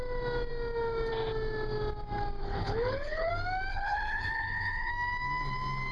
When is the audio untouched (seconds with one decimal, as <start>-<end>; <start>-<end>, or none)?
0.0-2.4; 3.3-3.7; 4.9-5.9

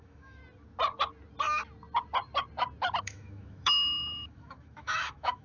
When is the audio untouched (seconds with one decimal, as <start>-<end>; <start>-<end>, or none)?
0.4-3.0

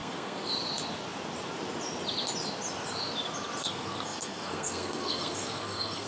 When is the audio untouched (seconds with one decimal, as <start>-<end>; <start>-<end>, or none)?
0.5-3.6

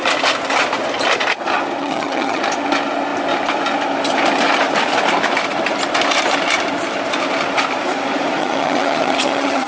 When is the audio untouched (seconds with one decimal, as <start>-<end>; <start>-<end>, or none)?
0.0-1.8; 2.4-8.4

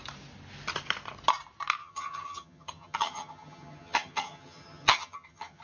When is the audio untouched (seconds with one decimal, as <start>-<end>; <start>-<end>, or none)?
0.0-1.8

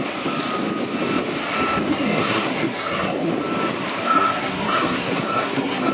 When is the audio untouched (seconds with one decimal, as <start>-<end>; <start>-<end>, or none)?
0.0-1.9; 3.3-4.0